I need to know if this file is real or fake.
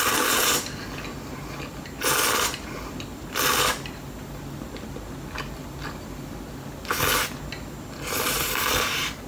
real